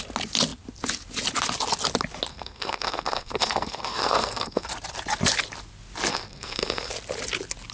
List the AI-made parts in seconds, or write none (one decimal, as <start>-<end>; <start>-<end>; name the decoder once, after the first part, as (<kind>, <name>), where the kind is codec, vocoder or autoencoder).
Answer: 2.3-4.7 (codec, SNAC); 6.1-6.9